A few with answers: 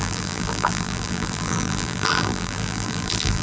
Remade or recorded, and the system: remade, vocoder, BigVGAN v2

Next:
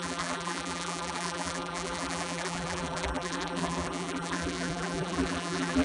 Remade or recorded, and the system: remade, vocoder, BigVGAN v2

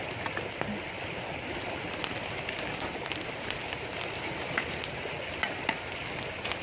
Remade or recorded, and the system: recorded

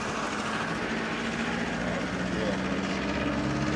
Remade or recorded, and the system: recorded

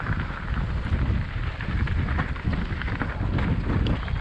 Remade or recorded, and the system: recorded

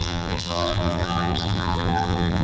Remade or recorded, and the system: remade, vocoder, BigVGAN v2